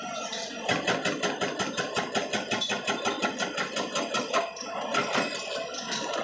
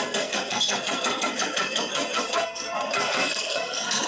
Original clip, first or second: first